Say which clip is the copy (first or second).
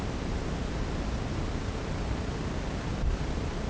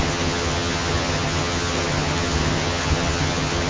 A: second